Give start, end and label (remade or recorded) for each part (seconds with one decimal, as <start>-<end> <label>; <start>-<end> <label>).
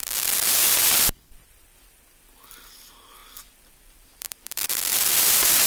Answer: 0.0-5.7 remade